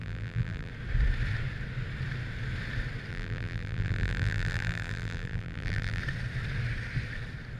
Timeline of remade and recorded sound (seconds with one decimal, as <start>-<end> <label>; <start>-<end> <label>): 0.0-0.7 remade; 0.7-3.1 recorded; 3.1-6.0 remade; 6.0-7.6 recorded

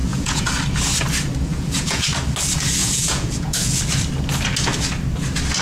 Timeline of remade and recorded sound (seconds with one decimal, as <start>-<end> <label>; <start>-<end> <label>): 0.0-0.5 remade; 0.5-1.5 recorded; 1.5-2.0 remade; 2.0-2.8 recorded; 2.8-3.8 remade; 3.8-5.6 recorded

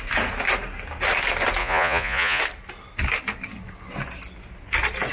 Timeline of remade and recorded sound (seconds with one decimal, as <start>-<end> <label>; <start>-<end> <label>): 0.0-1.6 recorded; 1.6-2.4 remade; 2.4-5.1 recorded

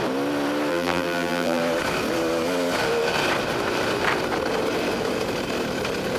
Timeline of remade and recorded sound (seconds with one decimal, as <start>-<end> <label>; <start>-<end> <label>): 0.0-0.7 recorded; 0.7-1.6 remade; 1.6-6.2 recorded

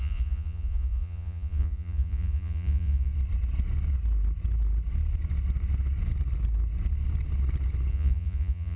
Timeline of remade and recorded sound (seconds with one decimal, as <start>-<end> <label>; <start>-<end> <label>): 0.0-3.1 remade; 3.1-7.9 recorded; 7.9-8.8 remade

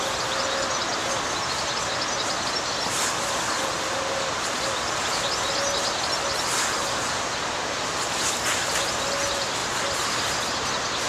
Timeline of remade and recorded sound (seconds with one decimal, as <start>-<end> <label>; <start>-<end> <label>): 0.0-11.1 recorded

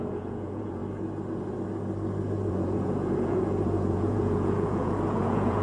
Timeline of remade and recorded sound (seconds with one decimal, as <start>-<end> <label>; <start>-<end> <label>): 0.0-0.8 remade; 0.8-2.5 recorded; 2.5-5.6 remade